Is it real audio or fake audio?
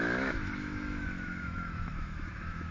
fake